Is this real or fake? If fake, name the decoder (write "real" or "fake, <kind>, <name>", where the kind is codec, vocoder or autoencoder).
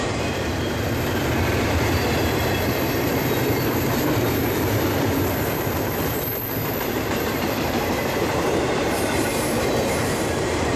fake, vocoder, BigVGAN v2